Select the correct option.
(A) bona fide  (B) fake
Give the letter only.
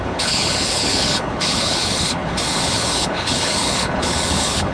B